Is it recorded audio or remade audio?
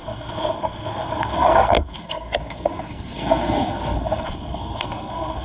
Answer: remade